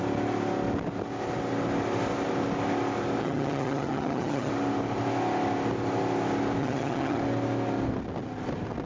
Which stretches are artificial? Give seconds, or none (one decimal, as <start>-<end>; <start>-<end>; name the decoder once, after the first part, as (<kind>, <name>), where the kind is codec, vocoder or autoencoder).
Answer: 3.2-4.5 (vocoder, HiFi-GAN); 6.6-7.2